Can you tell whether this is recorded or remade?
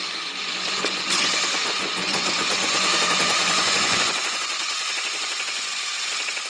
remade